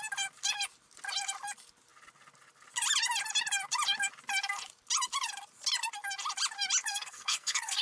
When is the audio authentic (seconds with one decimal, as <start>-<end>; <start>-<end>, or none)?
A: 0.0-6.9